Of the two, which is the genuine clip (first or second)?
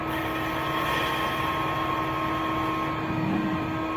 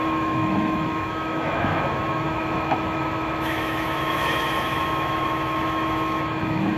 first